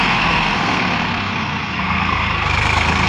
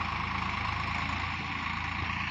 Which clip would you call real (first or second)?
second